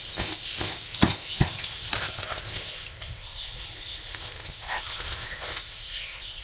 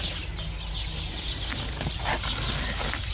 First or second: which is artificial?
first